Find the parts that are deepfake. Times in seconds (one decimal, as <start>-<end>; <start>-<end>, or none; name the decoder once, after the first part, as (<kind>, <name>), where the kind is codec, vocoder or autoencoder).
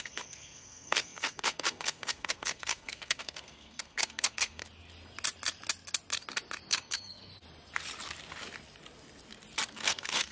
0.0-4.6 (codec, SNAC); 6.7-7.3; 9.7-10.3